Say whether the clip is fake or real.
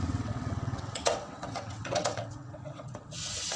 fake